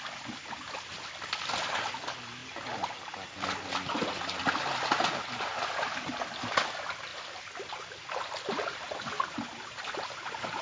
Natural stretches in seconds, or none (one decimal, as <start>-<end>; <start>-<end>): 0.0-10.6